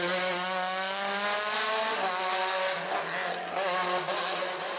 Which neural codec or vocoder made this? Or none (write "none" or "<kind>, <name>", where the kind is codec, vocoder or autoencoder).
none